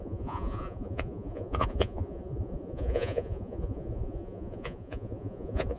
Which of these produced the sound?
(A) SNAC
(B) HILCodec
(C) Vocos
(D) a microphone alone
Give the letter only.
C